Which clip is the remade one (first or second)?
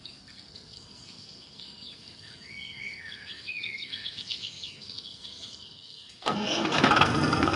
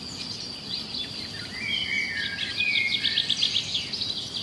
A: first